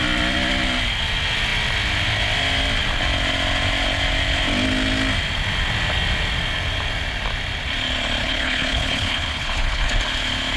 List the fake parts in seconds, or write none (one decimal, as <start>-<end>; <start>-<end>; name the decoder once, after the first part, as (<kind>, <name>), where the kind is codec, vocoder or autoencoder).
8.2-10.0 (codec, HILCodec)